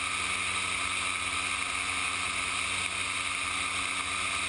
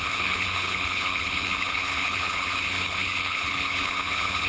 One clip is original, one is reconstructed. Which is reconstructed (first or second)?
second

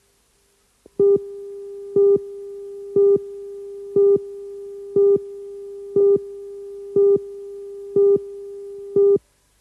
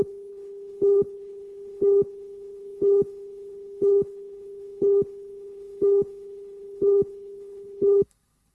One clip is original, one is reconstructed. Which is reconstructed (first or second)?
second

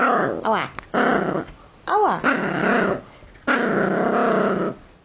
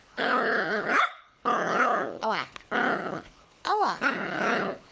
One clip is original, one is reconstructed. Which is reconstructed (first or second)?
second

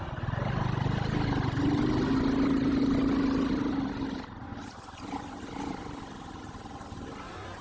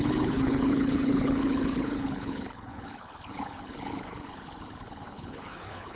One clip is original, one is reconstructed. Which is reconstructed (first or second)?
second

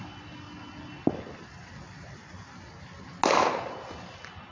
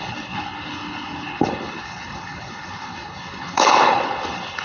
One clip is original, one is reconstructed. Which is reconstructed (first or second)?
second